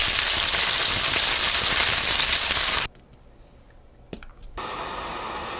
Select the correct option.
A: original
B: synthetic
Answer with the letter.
A